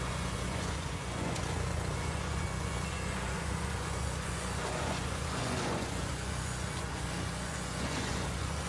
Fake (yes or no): yes